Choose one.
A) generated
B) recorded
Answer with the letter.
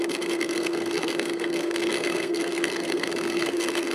A